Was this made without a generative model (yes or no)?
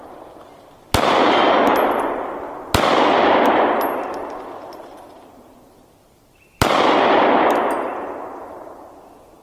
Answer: yes